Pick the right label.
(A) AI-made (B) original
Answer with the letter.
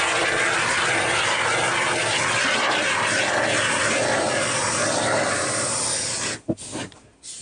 B